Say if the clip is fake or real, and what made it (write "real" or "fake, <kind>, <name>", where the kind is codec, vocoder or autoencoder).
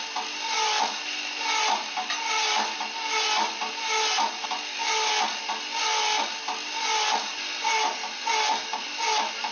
real